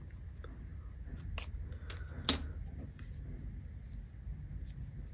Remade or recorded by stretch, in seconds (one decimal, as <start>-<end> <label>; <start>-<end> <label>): 0.0-5.1 recorded